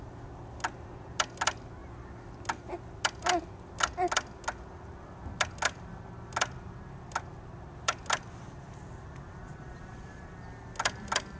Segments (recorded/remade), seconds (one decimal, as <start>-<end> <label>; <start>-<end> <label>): 0.0-9.4 recorded; 9.4-10.3 remade; 10.3-11.4 recorded